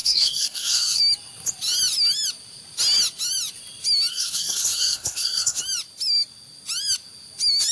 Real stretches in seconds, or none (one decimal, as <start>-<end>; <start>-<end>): 1.0-4.1; 5.6-7.7